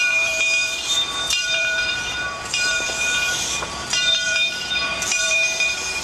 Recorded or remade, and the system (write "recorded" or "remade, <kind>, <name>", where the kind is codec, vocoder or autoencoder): remade, vocoder, BigVGAN v2